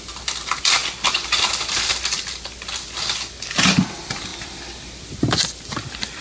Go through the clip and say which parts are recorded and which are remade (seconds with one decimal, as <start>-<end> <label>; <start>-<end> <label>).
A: 0.0-0.8 remade; 0.8-3.9 recorded; 3.9-6.2 remade